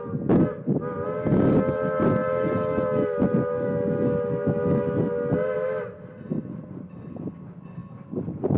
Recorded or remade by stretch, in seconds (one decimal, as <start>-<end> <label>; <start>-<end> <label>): 0.0-8.6 recorded